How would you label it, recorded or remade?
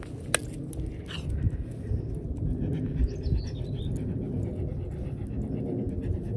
recorded